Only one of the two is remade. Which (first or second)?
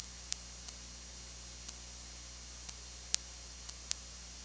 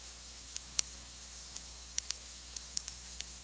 second